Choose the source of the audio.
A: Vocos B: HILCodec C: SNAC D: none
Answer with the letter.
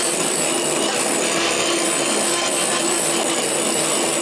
D